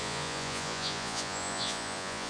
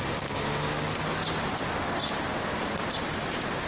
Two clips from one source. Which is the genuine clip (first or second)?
second